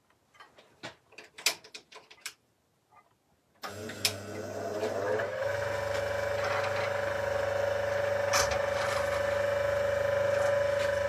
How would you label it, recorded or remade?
recorded